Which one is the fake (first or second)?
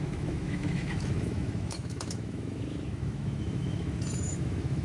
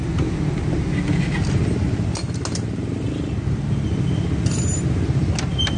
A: first